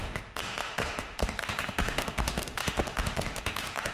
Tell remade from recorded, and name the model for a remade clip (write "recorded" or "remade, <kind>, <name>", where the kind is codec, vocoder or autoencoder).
remade, autoencoder, DAC-VAE